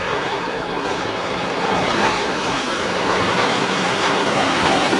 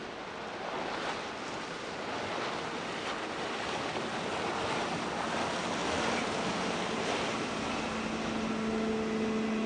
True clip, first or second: second